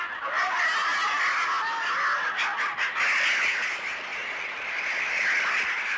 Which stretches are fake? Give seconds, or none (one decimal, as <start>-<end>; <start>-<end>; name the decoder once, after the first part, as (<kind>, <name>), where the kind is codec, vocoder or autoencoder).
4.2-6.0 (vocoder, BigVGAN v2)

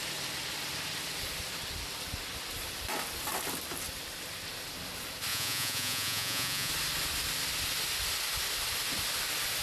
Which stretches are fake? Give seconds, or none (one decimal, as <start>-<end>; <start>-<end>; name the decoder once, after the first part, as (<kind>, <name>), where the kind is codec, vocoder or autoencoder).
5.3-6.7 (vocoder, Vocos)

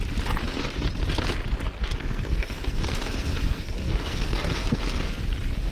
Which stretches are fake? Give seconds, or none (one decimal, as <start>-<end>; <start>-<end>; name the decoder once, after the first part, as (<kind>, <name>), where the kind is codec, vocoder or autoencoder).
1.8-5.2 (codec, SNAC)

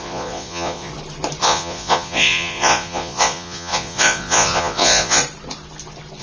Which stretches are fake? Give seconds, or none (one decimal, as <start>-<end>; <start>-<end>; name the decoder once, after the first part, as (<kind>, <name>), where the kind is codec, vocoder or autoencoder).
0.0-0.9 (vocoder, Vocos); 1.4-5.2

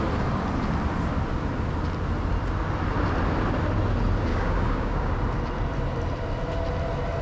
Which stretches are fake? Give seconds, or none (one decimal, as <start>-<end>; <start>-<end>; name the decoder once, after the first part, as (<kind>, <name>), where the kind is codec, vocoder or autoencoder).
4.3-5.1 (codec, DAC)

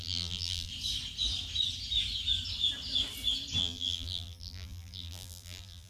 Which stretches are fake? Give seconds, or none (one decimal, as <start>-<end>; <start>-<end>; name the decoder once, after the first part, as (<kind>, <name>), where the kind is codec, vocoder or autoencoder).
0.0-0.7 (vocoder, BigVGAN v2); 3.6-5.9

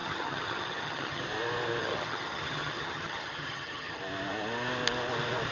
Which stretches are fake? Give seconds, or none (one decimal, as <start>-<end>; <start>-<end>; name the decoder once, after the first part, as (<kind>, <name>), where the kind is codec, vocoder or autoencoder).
0.0-1.2 (vocoder, HiFi-GAN); 1.8-4.0